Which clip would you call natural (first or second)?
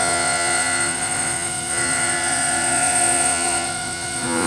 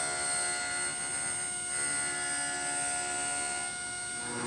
second